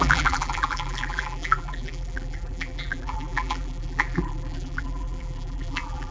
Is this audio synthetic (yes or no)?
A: yes